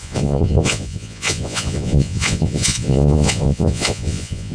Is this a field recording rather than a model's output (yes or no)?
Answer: no